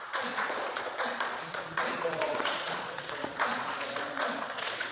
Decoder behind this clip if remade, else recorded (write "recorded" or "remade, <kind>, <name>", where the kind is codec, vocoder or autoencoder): remade, vocoder, Vocos